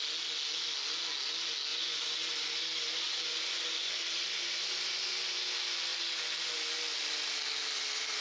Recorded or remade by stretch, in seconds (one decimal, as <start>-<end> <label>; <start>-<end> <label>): 0.0-1.7 recorded; 1.7-3.9 remade; 3.9-8.2 recorded